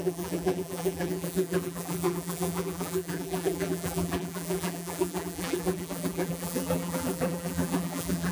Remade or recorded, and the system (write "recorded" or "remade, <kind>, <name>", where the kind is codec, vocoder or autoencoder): remade, vocoder, BigVGAN v2